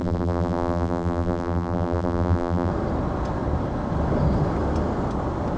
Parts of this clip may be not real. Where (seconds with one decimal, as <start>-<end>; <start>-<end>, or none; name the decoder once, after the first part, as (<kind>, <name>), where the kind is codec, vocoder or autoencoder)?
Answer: 0.0-2.7 (vocoder, BigVGAN v2)